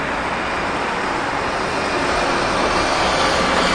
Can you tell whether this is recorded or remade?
recorded